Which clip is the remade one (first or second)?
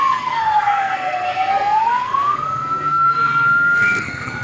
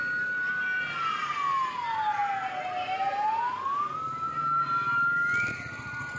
first